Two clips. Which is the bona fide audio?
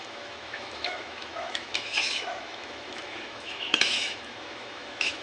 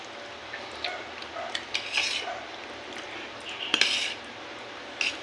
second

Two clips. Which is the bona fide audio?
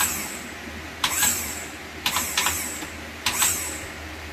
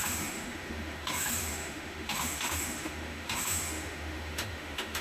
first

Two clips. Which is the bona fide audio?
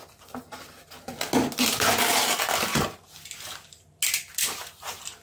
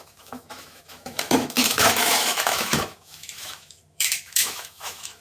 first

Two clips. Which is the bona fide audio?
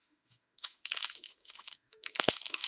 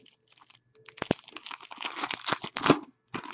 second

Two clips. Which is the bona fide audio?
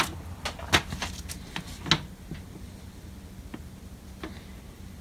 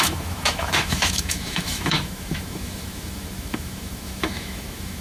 first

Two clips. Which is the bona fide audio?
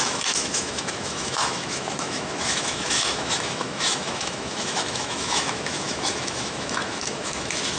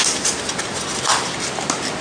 second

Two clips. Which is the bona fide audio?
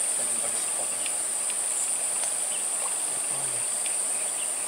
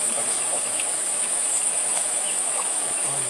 first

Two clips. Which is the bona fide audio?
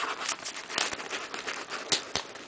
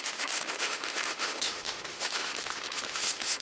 first